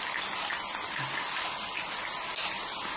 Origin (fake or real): real